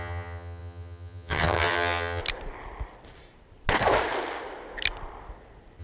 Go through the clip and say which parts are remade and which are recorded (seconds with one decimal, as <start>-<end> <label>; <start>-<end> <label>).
0.0-2.2 remade; 2.2-5.8 recorded